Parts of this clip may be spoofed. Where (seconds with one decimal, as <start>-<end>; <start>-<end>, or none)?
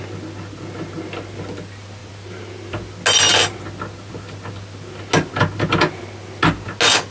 none